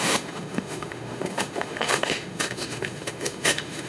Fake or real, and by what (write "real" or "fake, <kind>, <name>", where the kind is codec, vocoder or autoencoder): fake, autoencoder, DAC-VAE